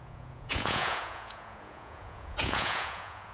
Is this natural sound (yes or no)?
no